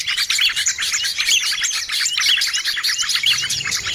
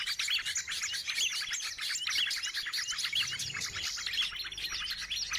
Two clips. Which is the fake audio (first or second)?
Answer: first